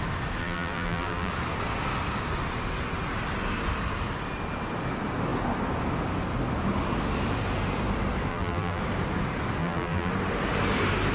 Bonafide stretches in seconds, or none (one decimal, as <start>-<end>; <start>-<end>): 0.0-0.4; 1.3-8.3; 8.8-9.6; 10.1-11.1